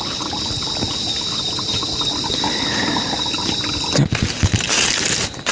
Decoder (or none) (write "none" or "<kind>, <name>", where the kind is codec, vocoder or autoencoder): none